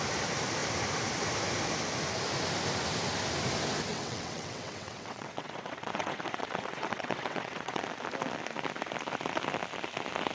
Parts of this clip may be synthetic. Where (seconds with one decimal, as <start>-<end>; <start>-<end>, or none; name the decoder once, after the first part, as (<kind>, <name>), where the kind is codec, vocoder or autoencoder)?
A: 3.9-7.8 (vocoder, WaveNeXt)